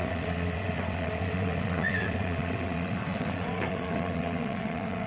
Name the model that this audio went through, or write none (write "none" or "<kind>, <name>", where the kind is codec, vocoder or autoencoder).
vocoder, WaveNeXt